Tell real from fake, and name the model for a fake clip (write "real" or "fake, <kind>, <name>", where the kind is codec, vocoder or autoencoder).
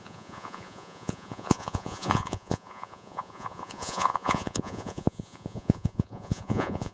fake, vocoder, Vocos